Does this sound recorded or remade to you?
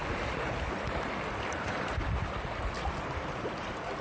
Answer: recorded